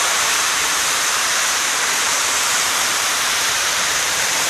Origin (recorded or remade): remade